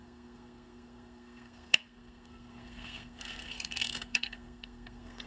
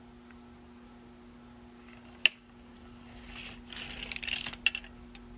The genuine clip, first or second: second